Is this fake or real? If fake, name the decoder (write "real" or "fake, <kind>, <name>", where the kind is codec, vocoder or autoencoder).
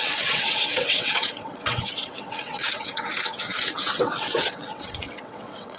fake, vocoder, WaveNeXt